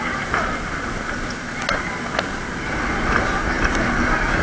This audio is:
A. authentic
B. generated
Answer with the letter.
A